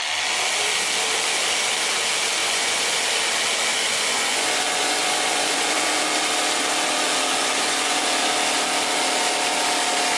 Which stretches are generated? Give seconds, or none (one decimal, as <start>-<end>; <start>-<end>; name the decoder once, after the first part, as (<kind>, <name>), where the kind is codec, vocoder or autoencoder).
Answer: 2.4-3.0 (vocoder, Vocos); 3.7-6.0; 7.4-8.0